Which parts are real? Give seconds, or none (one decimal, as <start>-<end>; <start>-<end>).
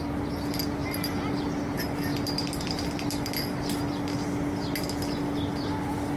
0.0-0.8; 1.4-6.2